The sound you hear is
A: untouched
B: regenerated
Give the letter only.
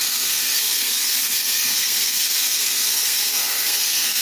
B